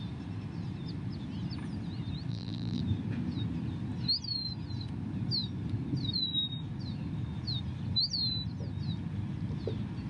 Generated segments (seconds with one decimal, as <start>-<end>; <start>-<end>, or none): 2.3-2.8